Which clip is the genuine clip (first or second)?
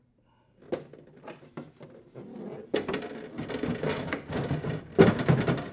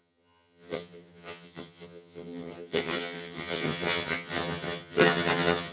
first